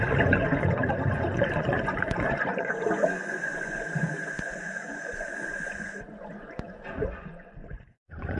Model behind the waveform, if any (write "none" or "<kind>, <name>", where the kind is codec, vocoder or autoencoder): vocoder, Vocos